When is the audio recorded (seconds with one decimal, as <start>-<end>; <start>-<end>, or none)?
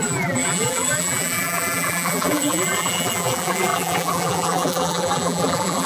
none